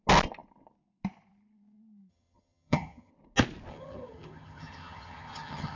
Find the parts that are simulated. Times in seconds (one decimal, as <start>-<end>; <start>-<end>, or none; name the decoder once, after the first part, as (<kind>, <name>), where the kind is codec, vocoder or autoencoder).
2.1-3.1 (vocoder, HiFi-GAN); 3.7-5.8